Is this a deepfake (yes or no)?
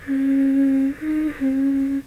yes